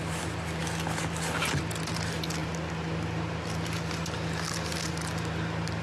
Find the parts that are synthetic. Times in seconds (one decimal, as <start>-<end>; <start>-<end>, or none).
none